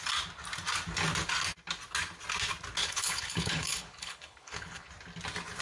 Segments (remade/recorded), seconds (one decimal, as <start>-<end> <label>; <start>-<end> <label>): 0.0-2.8 recorded; 2.8-4.9 remade; 4.9-5.6 recorded